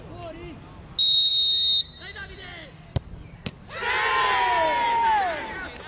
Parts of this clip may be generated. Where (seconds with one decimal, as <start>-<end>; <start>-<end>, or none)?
none